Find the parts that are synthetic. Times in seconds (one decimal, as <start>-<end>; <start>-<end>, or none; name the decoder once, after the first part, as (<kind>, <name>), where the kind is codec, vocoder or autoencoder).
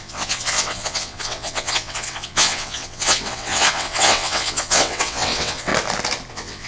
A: 0.0-5.7 (vocoder, WaveNeXt); 6.3-6.7